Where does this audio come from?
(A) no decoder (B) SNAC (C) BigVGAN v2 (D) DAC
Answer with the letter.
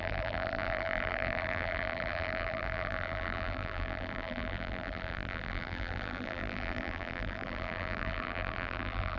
C